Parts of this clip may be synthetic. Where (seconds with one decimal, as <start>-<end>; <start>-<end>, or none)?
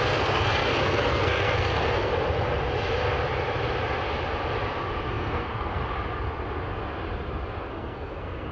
0.0-2.1; 5.1-5.8; 7.7-8.5